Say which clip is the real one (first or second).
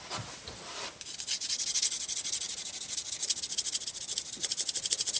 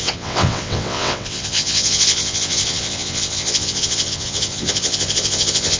first